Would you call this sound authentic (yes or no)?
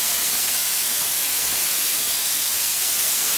no